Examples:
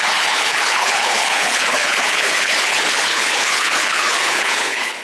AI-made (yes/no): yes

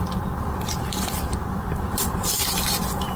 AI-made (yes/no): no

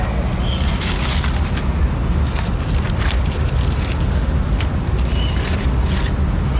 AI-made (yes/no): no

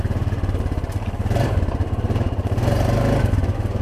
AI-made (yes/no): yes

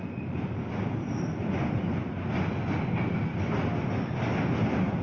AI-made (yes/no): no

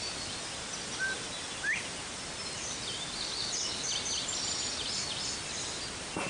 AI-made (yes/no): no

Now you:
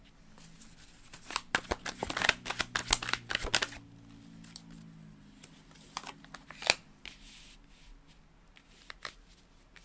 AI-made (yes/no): no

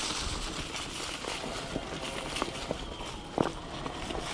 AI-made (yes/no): no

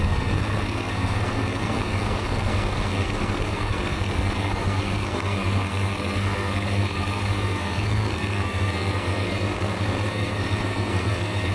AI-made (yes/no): yes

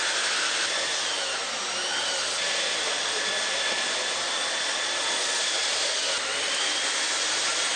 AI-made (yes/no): no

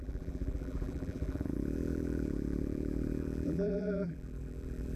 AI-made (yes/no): yes